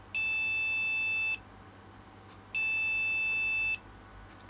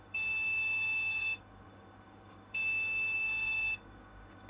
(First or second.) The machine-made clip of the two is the second